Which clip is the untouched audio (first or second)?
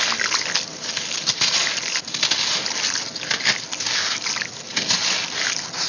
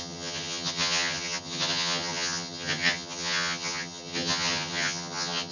first